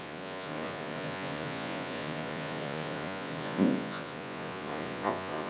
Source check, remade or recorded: remade